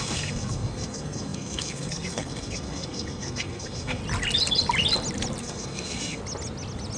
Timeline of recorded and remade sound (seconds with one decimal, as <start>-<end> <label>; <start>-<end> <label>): 0.0-4.0 remade; 4.0-5.4 recorded; 5.4-6.2 remade; 6.2-7.0 recorded